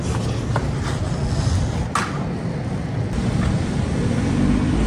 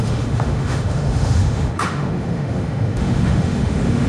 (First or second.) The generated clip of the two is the second